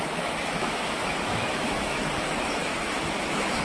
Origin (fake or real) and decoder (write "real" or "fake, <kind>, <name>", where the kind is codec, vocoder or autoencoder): fake, autoencoder, DAC-VAE